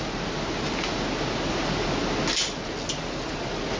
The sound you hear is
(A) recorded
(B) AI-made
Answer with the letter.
A